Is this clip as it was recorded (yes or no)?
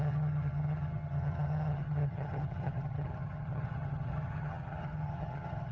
no